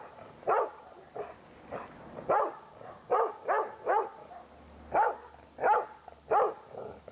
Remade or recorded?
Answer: recorded